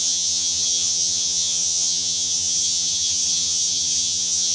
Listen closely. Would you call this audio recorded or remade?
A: remade